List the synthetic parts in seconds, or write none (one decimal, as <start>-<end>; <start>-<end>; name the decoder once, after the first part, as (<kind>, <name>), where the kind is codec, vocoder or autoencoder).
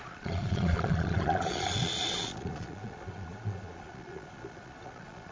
0.0-5.3 (vocoder, Vocos)